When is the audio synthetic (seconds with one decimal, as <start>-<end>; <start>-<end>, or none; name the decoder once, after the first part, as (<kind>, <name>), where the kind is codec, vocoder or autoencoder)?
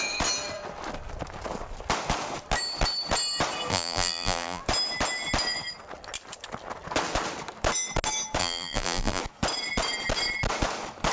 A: 3.7-4.6 (vocoder, BigVGAN v2); 8.4-9.2